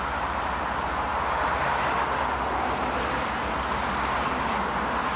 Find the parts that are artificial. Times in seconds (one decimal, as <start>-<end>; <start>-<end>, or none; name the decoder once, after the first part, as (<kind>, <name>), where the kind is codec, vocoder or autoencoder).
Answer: none